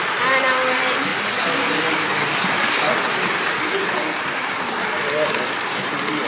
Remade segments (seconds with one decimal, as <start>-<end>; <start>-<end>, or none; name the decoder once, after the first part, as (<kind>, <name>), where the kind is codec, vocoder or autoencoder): none